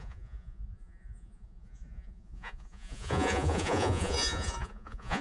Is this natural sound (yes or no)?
no